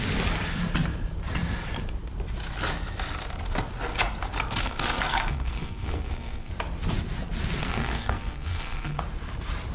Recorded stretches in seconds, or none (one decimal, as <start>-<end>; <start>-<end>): 0.0-4.6; 6.5-7.6; 9.0-9.7